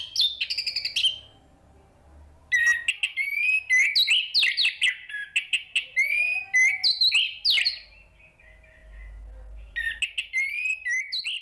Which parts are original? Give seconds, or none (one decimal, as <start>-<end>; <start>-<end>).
0.0-11.4